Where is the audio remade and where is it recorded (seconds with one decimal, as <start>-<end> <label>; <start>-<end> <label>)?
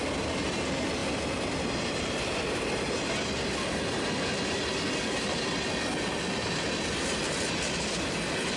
0.0-8.6 recorded